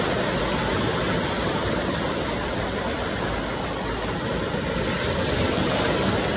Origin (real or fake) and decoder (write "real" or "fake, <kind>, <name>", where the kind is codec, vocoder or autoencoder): fake, vocoder, BigVGAN v2